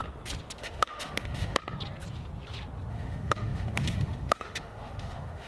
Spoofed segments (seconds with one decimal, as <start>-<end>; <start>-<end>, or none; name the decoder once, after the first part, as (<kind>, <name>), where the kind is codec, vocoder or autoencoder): 0.6-1.6 (autoencoder, DAC-VAE); 2.9-5.5